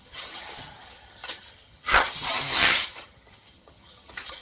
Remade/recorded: remade